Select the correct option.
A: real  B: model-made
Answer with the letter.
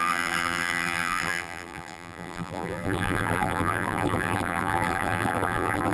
B